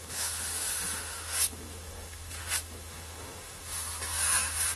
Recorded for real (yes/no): no